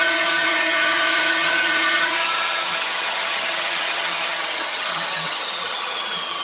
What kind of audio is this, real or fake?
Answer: fake